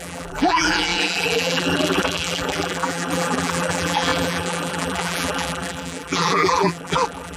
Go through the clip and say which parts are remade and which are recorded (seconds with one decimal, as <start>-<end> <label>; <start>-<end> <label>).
0.0-7.4 remade